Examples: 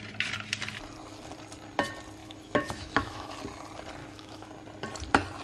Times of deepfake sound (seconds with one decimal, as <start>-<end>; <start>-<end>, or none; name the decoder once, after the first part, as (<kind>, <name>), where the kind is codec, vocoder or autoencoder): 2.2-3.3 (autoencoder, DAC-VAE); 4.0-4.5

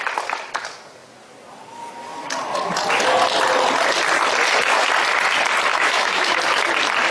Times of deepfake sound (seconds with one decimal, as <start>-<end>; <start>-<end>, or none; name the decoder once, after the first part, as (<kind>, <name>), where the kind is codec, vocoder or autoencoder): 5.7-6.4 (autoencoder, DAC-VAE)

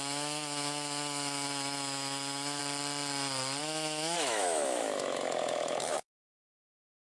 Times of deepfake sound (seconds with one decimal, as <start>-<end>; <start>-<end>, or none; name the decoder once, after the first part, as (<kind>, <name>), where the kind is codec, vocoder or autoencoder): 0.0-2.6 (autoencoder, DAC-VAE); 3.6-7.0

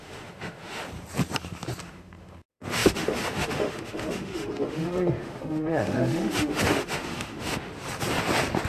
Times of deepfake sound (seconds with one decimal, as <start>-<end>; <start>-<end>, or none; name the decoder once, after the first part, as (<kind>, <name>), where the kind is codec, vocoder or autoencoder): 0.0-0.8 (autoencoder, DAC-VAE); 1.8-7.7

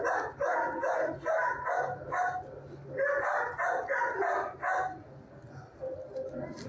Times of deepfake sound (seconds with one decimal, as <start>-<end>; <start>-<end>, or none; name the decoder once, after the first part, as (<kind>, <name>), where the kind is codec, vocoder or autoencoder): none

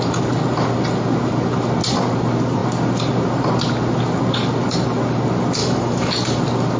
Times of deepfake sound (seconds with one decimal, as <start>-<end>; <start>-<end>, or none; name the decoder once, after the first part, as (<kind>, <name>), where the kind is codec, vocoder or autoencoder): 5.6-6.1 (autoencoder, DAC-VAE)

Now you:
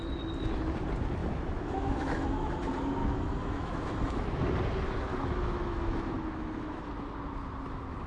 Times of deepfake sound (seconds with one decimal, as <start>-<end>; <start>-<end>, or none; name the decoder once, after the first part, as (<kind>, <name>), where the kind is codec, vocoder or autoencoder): 1.2-2.5 (autoencoder, DAC-VAE); 3.0-4.4; 5.1-6.9